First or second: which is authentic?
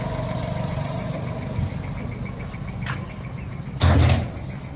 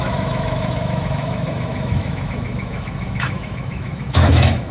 first